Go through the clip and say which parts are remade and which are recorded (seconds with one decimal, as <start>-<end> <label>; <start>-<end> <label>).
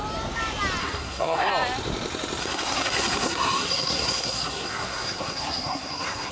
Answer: 0.0-0.8 recorded; 0.8-1.5 remade; 1.5-2.4 recorded; 2.4-6.3 remade